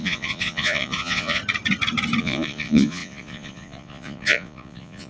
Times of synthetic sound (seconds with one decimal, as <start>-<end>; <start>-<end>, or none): 0.0-1.4; 2.2-5.1